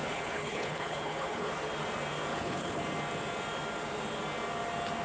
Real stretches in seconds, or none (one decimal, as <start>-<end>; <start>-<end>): 1.5-2.3; 2.8-5.0